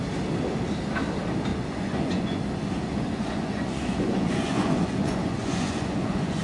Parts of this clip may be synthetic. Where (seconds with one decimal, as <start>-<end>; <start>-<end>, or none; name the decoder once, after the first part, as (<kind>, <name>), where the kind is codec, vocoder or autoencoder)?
1.5-2.4 (vocoder, Vocos); 2.9-6.4